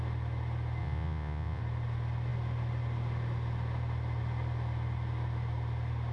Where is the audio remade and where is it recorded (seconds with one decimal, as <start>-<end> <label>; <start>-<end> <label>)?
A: 0.0-0.8 recorded; 0.8-1.6 remade; 1.6-6.1 recorded

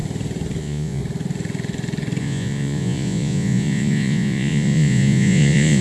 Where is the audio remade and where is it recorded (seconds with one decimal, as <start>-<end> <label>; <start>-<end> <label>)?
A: 0.0-0.6 recorded; 0.6-1.0 remade; 1.0-2.2 recorded; 2.2-5.8 remade

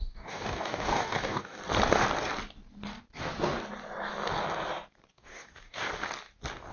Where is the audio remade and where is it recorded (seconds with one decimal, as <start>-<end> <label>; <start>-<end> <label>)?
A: 0.0-1.6 remade; 1.6-5.1 recorded; 5.1-5.9 remade; 5.9-6.7 recorded

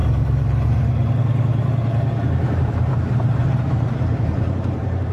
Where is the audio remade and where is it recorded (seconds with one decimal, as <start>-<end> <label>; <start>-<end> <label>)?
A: 0.0-0.8 remade; 0.8-3.4 recorded; 3.4-5.1 remade

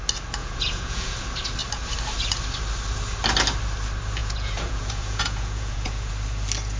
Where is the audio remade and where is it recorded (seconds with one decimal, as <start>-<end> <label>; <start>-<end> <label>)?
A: 0.0-0.4 recorded; 0.4-1.1 remade; 1.1-4.2 recorded; 4.2-6.1 remade; 6.1-6.8 recorded

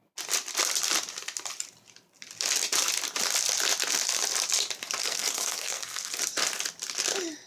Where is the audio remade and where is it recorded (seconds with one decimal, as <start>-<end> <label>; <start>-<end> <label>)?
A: 0.0-5.0 recorded; 5.0-6.2 remade; 6.2-7.5 recorded

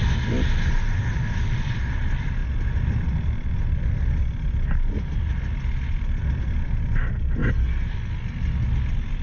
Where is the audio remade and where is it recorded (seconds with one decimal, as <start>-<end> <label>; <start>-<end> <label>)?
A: 0.0-9.2 recorded